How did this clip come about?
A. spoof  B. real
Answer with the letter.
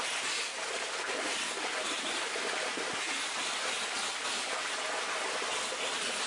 B